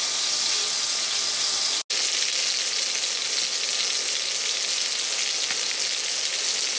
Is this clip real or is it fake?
real